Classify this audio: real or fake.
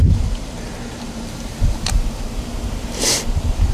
fake